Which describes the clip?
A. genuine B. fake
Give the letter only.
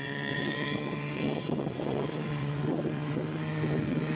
B